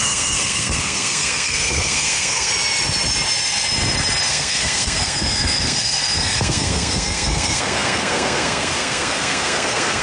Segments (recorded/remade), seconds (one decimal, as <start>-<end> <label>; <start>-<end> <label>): 0.0-2.5 remade; 2.5-4.3 recorded; 4.3-10.0 remade